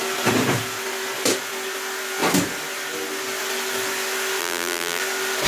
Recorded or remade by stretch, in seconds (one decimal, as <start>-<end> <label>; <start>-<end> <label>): 0.0-4.4 recorded; 4.4-5.0 remade; 5.0-5.5 recorded